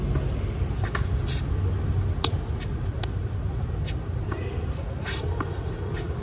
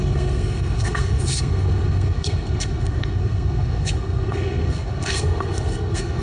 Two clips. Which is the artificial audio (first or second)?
second